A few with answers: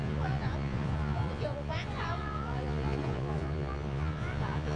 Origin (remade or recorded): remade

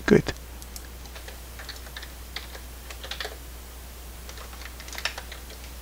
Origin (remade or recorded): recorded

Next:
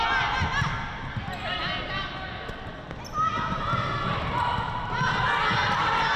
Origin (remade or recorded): recorded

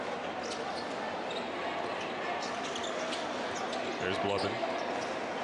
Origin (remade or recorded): recorded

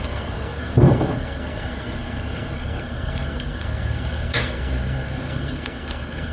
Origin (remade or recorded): remade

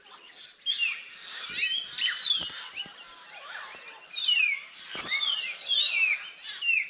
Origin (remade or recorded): recorded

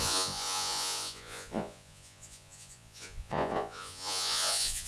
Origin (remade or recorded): remade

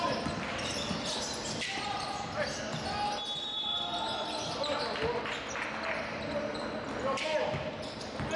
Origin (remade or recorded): recorded